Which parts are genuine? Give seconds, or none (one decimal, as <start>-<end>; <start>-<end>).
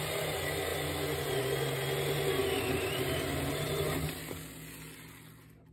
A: 0.0-5.7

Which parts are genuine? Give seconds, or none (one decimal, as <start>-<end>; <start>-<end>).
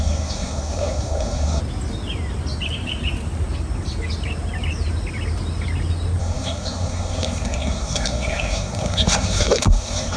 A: 1.6-6.2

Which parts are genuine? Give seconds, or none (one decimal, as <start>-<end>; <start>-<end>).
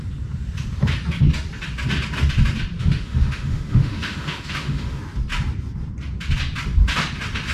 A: 0.0-2.8; 5.0-7.5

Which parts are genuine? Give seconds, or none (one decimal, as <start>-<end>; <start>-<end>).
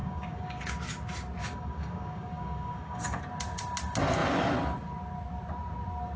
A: 0.8-1.4; 3.2-6.2